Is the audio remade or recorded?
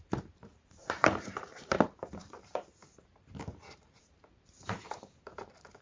remade